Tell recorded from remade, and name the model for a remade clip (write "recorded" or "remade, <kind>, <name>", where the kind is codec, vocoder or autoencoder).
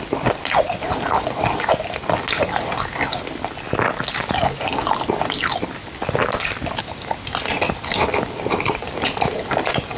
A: recorded